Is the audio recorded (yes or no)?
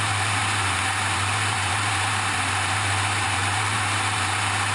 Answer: no